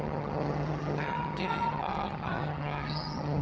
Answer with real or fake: fake